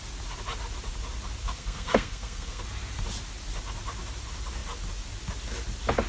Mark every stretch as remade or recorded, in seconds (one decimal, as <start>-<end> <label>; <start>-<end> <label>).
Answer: 0.0-1.4 recorded; 1.4-2.6 remade; 2.6-6.1 recorded